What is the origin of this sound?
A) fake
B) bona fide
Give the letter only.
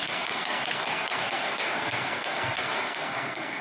A